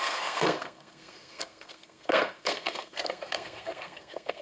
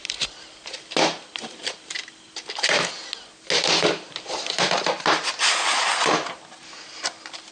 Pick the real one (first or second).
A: second